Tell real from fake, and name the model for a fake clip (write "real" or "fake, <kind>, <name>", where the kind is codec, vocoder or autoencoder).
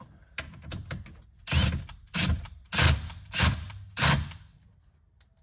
real